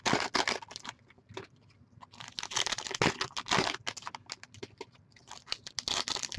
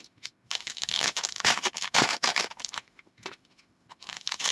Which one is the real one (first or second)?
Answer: first